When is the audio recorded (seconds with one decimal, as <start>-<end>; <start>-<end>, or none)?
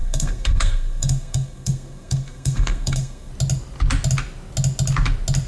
3.3-5.5